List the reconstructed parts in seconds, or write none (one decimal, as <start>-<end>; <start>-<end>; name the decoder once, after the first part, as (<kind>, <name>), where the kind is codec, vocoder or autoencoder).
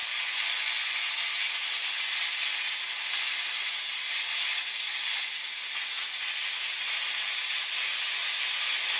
0.0-1.0 (vocoder, Vocos)